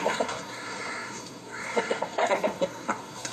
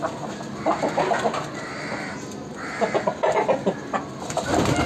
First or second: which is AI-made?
first